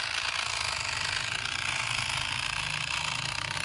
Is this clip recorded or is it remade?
recorded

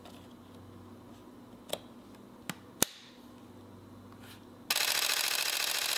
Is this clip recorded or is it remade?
recorded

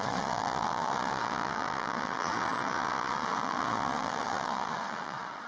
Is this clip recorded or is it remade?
remade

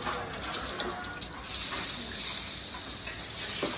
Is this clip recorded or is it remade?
recorded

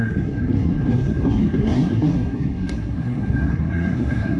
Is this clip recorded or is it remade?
remade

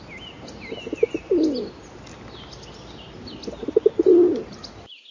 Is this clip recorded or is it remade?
recorded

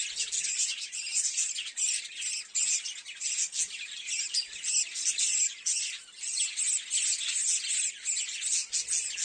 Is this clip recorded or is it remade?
recorded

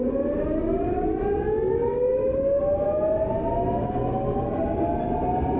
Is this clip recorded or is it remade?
recorded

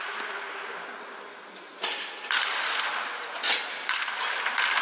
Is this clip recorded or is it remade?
recorded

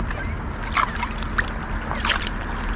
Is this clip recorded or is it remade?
recorded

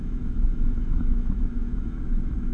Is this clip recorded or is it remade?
remade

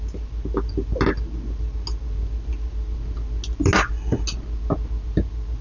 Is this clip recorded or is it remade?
recorded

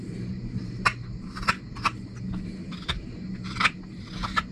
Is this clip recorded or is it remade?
remade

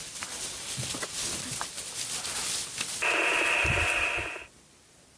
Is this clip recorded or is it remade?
recorded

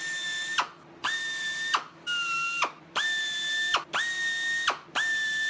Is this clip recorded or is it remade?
recorded